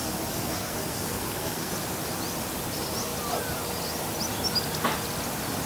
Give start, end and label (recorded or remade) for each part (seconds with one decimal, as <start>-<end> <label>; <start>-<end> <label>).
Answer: 0.0-1.7 remade; 1.7-5.7 recorded